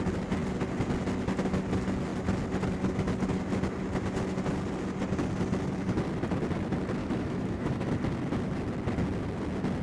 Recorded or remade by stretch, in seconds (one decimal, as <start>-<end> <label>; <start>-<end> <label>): 0.0-7.0 recorded; 7.0-7.9 remade; 7.9-9.8 recorded